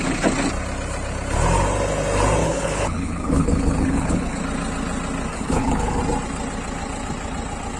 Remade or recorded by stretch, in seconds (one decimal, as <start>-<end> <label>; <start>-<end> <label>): 0.0-2.4 recorded; 2.4-4.4 remade; 4.4-5.3 recorded; 5.3-6.0 remade; 6.0-7.8 recorded